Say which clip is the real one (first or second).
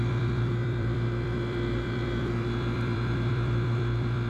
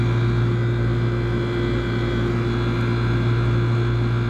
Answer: second